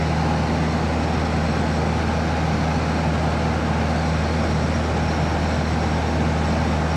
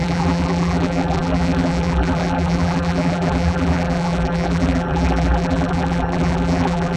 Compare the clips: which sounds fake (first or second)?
second